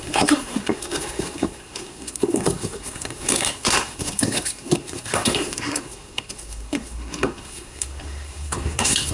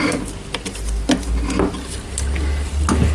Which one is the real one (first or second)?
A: second